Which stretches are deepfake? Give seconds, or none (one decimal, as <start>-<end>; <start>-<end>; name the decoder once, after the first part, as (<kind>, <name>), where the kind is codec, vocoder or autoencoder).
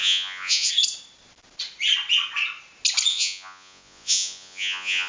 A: 0.0-0.7 (vocoder, Vocos); 3.1-5.1